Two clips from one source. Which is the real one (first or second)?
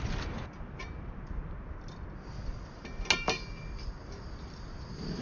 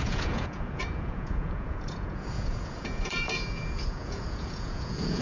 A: first